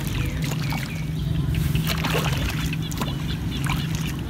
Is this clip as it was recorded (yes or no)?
yes